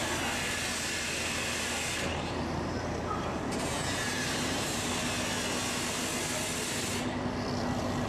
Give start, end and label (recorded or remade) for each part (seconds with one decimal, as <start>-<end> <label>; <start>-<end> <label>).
0.0-2.1 recorded; 2.1-4.9 remade; 4.9-8.1 recorded